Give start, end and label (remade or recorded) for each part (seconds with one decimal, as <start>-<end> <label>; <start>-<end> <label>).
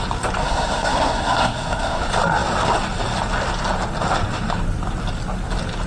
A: 0.0-0.4 recorded; 0.4-2.0 remade; 2.0-5.9 recorded